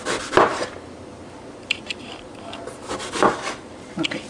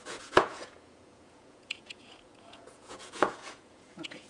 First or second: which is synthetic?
second